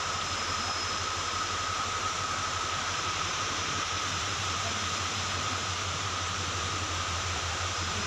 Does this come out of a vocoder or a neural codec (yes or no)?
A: yes